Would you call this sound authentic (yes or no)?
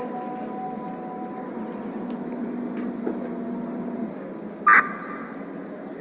yes